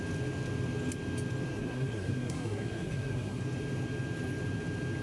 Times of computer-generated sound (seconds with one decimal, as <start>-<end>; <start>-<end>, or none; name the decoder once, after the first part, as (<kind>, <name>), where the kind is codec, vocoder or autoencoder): 1.5-3.4 (codec, SNAC)